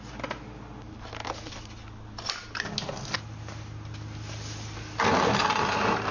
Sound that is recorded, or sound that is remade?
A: recorded